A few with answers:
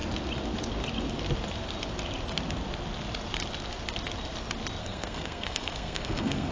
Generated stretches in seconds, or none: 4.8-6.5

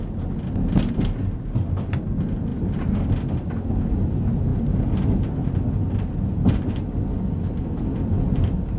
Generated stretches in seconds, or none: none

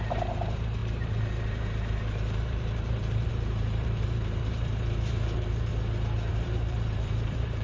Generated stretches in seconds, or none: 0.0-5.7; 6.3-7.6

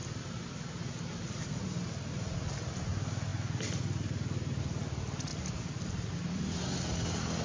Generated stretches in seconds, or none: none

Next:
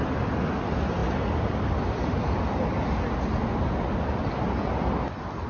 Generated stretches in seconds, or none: none

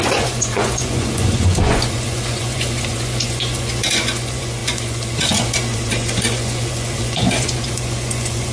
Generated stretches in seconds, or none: 0.0-8.5

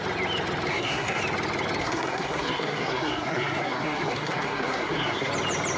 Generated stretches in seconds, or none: 0.7-1.2; 1.8-5.3

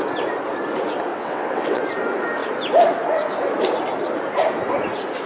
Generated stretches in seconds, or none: 1.1-1.8